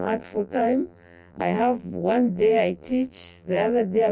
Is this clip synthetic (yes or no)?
yes